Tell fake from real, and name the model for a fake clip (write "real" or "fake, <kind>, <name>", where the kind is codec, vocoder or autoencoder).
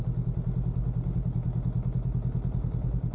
real